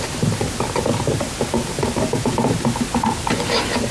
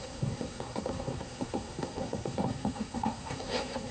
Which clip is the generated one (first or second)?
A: second